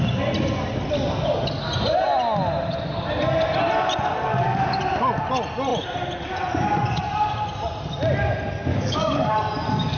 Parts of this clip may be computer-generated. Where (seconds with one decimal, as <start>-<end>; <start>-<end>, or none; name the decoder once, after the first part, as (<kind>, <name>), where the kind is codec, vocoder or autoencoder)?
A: 8.7-9.3 (codec, DAC)

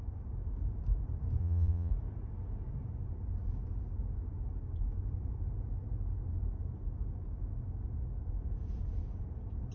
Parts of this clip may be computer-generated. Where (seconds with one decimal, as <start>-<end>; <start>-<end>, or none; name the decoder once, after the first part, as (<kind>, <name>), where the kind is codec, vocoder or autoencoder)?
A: 1.4-1.9 (vocoder, Vocos)

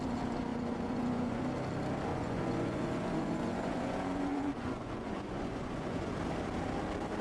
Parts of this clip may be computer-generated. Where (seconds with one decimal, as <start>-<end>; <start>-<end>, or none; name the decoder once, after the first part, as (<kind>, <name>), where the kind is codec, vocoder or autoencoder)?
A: 0.5-1.4 (vocoder, Vocos); 2.1-6.1

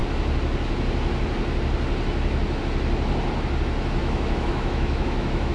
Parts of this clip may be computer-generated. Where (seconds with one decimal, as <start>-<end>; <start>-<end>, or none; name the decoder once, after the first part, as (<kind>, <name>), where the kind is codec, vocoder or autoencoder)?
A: 4.0-5.5 (autoencoder, DAC-VAE)

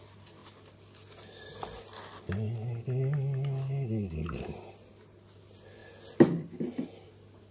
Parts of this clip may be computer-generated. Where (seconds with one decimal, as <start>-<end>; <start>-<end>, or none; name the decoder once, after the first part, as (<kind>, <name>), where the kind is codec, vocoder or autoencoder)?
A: none

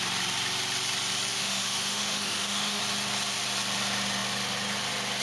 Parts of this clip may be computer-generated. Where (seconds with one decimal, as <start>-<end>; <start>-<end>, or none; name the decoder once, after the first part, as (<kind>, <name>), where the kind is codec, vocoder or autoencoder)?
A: 1.3-2.8 (autoencoder, DAC-VAE)

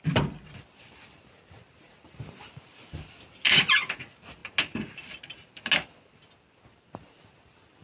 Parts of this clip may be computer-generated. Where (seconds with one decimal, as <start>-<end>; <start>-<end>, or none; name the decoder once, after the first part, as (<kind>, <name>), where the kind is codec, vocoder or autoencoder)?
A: none